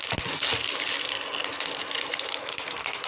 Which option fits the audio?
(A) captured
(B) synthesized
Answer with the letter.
A